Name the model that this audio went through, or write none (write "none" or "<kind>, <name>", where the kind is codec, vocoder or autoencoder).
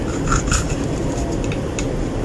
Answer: none